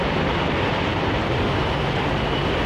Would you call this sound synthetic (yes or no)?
no